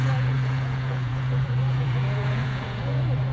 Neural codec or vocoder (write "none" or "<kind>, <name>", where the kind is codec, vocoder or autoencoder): vocoder, Vocos